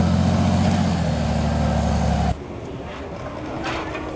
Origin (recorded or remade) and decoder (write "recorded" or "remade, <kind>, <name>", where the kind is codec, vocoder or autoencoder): recorded